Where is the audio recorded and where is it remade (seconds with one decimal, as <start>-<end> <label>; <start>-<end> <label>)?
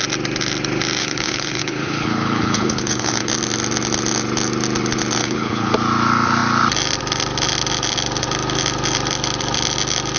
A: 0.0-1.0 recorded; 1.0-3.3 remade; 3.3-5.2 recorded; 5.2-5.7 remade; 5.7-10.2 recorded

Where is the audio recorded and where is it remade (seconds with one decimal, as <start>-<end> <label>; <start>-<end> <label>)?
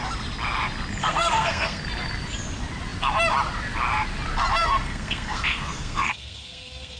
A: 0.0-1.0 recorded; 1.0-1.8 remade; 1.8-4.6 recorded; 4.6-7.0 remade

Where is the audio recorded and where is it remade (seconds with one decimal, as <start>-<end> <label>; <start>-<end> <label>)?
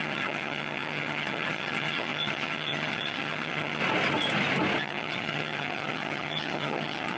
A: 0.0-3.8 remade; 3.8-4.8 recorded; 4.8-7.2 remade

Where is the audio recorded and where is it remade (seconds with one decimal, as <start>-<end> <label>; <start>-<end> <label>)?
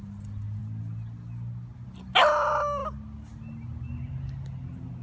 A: 0.0-5.0 recorded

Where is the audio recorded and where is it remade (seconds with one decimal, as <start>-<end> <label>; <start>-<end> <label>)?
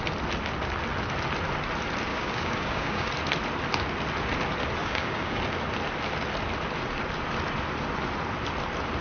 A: 0.0-2.1 recorded; 2.1-3.1 remade; 3.1-4.8 recorded; 4.8-5.4 remade; 5.4-9.0 recorded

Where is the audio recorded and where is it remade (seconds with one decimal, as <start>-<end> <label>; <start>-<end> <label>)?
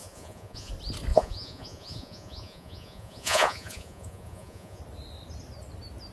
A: 0.0-0.7 remade; 0.7-1.1 recorded; 1.1-4.8 remade; 4.8-6.1 recorded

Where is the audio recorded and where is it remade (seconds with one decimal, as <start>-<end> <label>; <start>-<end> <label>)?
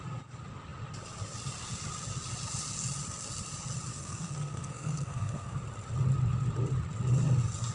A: 0.0-3.9 recorded; 3.9-5.6 remade; 5.6-7.7 recorded